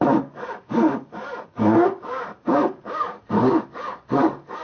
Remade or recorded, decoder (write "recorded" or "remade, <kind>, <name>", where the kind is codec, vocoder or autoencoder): remade, codec, DAC